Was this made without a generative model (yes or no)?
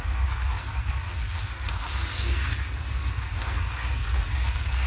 no